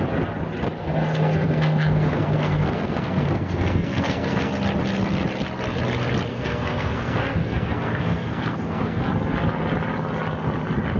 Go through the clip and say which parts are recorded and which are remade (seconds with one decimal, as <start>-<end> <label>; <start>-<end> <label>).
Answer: 0.0-0.8 recorded; 0.8-4.5 remade; 4.5-6.3 recorded; 6.3-9.0 remade; 9.0-11.0 recorded